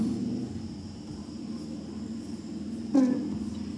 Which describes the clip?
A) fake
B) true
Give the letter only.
B